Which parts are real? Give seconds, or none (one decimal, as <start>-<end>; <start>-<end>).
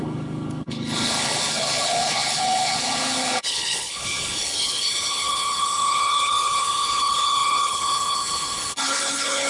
none